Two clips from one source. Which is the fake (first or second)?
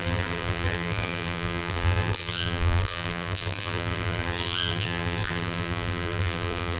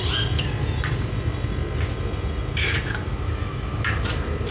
first